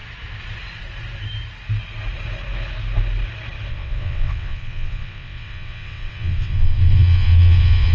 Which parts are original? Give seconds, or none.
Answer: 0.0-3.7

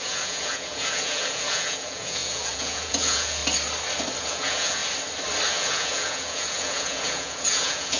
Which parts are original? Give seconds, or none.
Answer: 3.4-4.2; 4.8-5.5

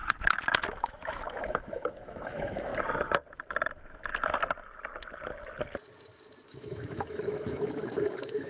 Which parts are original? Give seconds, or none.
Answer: 0.0-0.7; 2.7-6.5

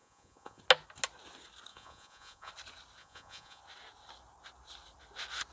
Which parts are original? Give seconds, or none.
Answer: 0.6-1.7; 2.5-3.0; 3.6-5.5

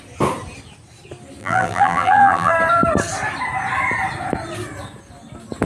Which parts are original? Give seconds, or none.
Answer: 0.0-1.4; 2.5-5.7

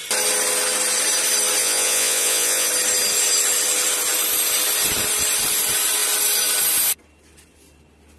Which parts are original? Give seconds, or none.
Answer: 0.0-1.6; 2.7-8.2

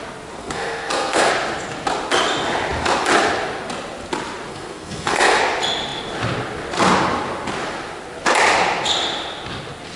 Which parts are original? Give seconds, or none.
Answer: 0.0-0.4; 1.3-4.5; 5.4-10.0

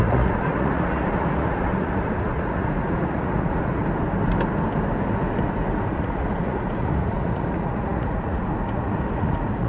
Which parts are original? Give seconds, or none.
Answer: 3.8-5.9